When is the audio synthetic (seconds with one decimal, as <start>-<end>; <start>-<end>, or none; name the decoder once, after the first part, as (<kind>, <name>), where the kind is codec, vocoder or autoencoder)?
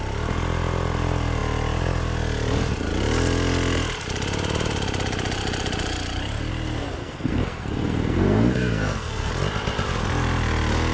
7.0-9.3 (codec, SNAC)